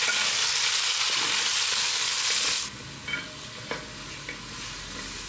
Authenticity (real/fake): real